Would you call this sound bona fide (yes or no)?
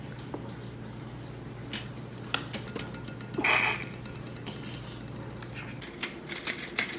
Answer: yes